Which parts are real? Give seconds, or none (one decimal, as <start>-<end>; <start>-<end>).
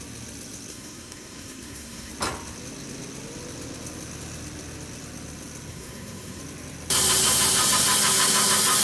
0.0-0.7; 2.1-5.7; 6.4-8.8